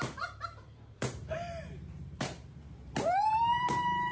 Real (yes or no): no